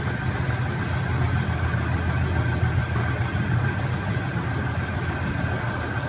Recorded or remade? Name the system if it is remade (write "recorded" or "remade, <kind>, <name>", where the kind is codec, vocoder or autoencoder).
recorded